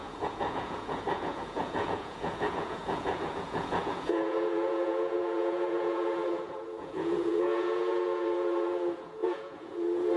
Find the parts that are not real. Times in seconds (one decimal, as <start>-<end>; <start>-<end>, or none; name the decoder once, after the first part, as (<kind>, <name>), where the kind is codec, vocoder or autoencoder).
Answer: 0.0-10.2 (vocoder, Vocos)